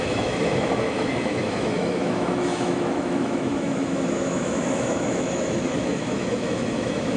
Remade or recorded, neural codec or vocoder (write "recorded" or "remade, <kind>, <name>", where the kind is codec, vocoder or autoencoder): remade, autoencoder, DAC-VAE